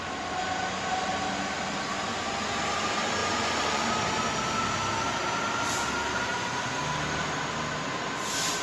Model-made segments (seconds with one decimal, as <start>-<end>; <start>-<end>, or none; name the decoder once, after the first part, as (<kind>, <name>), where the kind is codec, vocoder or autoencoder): 3.2-3.9 (vocoder, Vocos); 6.3-6.8